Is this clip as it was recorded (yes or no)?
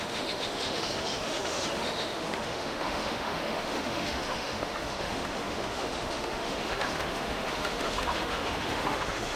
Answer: no